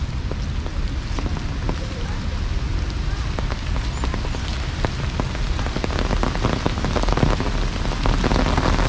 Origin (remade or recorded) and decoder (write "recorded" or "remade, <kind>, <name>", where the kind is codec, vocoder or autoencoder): recorded